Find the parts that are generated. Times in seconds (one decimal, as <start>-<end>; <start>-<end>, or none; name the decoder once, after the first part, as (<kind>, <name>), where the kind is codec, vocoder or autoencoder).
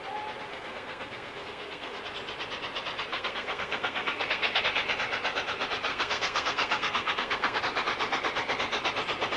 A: 0.5-2.0 (codec, SNAC); 3.1-4.6; 5.9-7.6